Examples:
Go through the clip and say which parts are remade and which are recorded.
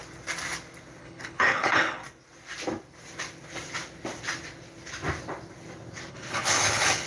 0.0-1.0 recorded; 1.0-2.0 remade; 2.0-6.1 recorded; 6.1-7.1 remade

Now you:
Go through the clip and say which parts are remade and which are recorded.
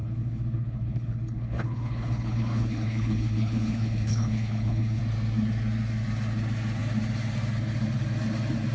0.0-5.0 remade; 5.0-8.7 recorded